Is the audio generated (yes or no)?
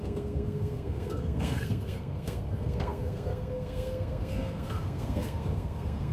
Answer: yes